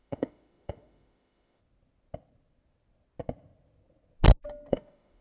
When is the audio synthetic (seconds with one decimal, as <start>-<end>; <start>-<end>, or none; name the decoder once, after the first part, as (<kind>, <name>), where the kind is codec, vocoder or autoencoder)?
0.0-1.6 (autoencoder, DAC-VAE); 4.7-5.2